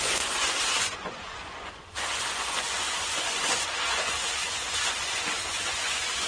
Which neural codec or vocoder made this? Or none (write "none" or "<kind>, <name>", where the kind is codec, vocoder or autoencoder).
vocoder, Vocos